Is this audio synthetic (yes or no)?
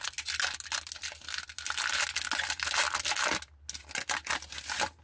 no